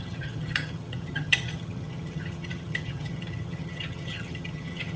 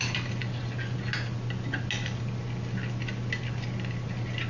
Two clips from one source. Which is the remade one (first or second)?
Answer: first